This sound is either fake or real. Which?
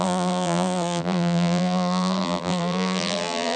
fake